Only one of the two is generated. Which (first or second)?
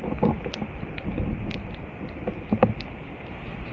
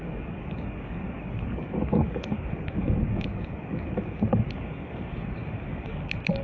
second